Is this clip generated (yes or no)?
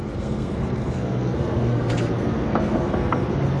yes